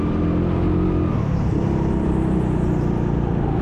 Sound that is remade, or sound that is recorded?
recorded